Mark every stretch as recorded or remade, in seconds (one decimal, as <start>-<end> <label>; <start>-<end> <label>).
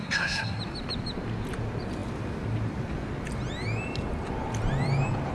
0.0-0.6 remade; 0.6-5.3 recorded